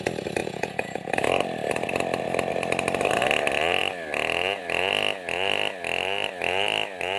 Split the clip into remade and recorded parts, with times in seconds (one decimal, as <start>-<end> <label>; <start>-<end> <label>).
0.0-0.4 recorded; 0.4-1.1 remade; 1.1-7.2 recorded